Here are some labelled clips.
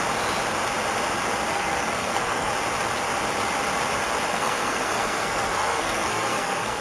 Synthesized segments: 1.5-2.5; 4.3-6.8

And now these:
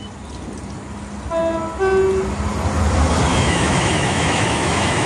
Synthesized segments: 3.3-5.1

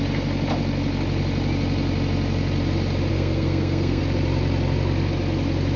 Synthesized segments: 3.1-4.0

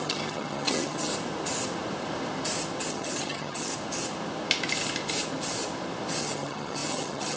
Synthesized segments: 0.0-1.1; 2.9-3.7; 6.2-7.4

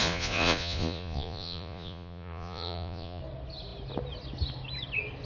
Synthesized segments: 0.0-3.2

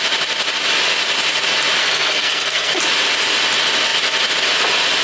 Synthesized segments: 1.8-2.8

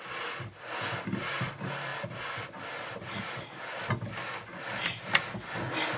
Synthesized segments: none

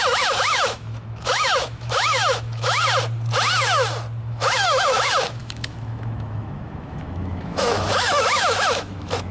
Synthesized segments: 0.0-2.8; 4.2-9.3